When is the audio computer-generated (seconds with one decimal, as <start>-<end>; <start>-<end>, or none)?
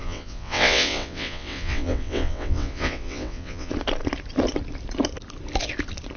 0.0-3.7